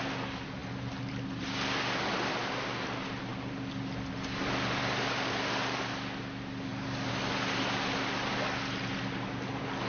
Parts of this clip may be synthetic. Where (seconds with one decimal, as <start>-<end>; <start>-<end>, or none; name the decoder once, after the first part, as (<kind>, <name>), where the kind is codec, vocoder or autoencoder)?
none